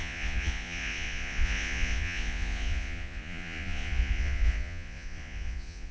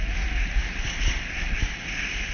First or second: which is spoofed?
first